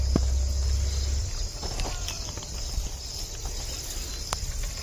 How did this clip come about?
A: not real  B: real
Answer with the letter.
B